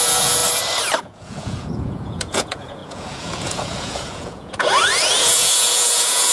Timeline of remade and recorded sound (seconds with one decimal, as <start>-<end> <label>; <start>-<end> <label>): 0.0-0.4 remade; 0.4-1.0 recorded; 1.0-6.3 remade